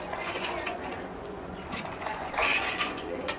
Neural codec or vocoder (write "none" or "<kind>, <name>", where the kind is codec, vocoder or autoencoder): vocoder, Vocos